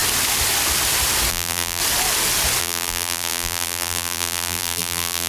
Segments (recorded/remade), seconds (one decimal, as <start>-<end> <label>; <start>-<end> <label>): 0.0-1.3 recorded; 1.3-1.8 remade; 1.8-2.6 recorded; 2.6-5.3 remade